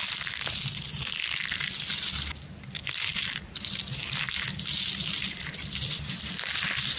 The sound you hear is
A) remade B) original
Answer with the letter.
B